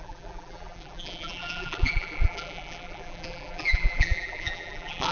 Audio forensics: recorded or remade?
remade